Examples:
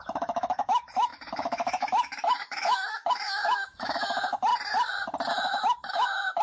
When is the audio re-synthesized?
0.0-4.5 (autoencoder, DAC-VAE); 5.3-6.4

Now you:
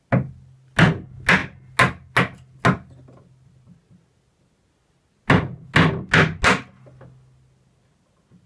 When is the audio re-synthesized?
none

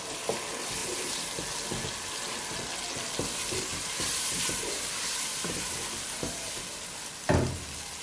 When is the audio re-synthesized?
0.8-1.3 (vocoder, BigVGAN v2); 3.7-6.6

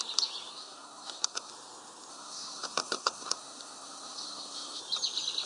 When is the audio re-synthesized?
0.5-1.5 (codec, SNAC); 2.1-4.8